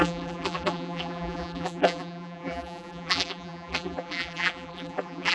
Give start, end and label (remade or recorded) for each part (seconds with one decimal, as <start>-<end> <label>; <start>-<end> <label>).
0.0-5.3 remade